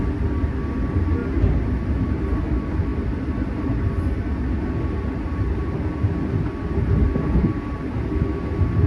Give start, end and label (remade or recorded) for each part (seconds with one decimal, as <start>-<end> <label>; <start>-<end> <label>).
0.0-8.9 recorded